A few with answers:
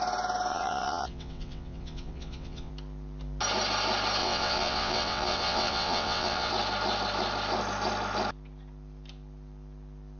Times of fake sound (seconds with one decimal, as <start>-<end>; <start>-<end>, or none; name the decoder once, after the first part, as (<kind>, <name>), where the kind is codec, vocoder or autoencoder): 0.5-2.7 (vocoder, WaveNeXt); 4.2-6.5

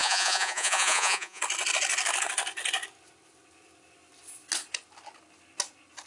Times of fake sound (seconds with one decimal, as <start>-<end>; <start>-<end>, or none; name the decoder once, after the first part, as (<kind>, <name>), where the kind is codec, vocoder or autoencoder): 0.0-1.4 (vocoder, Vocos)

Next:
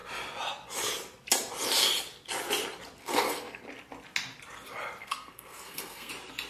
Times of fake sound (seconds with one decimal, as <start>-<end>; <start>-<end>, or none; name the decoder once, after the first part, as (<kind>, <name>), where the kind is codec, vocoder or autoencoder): 3.0-3.6 (codec, SNAC); 5.0-6.1